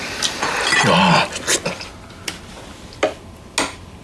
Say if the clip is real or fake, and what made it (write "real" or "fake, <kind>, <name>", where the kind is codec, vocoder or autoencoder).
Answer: real